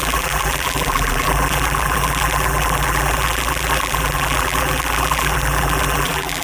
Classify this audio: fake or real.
fake